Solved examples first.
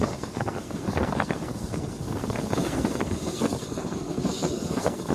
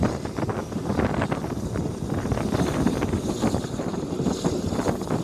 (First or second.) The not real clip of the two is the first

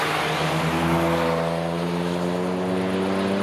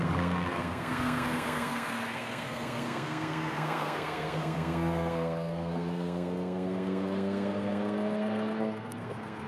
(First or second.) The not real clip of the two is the second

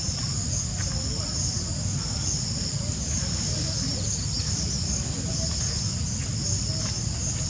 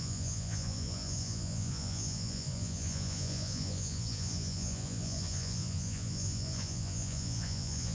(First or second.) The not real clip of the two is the second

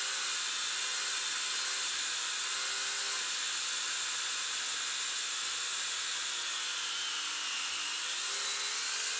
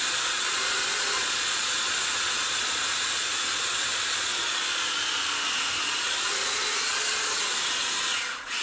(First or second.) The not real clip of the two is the second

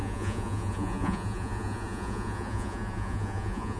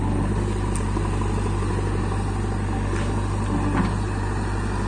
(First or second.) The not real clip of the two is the first